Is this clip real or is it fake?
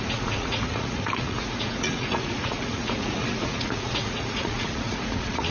fake